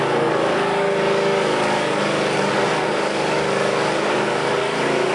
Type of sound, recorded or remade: remade